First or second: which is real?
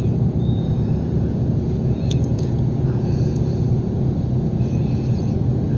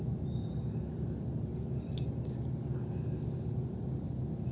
second